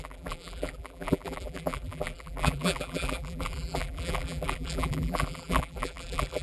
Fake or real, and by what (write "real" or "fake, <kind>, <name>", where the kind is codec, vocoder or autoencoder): fake, vocoder, BigVGAN v2